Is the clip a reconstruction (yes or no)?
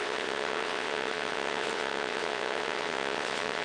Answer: yes